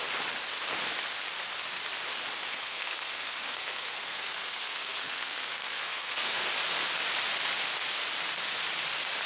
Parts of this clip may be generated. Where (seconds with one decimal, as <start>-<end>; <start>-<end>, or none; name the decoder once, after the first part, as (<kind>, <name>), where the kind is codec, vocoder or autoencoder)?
2.5-6.5 (codec, SNAC)